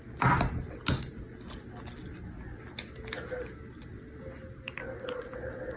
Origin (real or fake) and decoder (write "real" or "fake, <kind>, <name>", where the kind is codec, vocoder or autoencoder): real